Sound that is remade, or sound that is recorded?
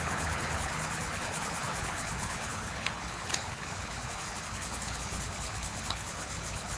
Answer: remade